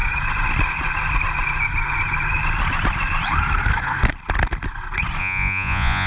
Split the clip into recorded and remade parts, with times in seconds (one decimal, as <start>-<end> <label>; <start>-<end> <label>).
0.0-5.2 recorded; 5.2-6.1 remade